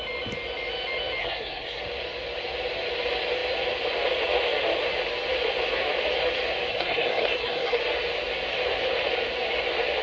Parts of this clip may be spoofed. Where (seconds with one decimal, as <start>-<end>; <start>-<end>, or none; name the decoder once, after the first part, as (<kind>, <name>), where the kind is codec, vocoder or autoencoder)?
1.2-1.8 (codec, SNAC); 6.7-7.8

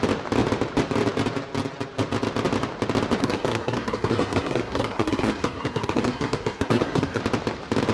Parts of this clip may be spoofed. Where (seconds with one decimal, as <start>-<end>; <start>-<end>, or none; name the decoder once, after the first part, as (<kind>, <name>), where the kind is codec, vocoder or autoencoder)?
3.2-7.2 (codec, SNAC)